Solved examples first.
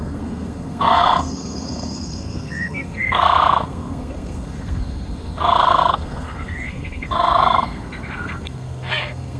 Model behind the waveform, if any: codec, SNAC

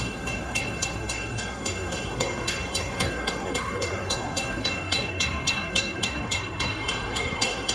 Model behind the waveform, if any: codec, SNAC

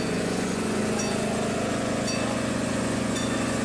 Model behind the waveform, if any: vocoder, Vocos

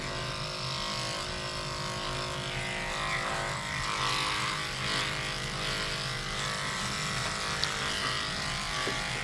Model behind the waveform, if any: none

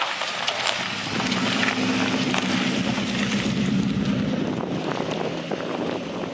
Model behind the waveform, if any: none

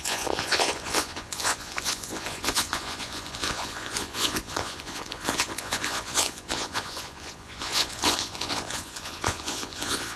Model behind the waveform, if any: vocoder, Vocos